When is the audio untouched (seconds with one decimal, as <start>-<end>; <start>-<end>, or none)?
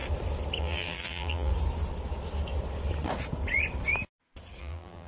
0.0-0.6; 1.5-4.6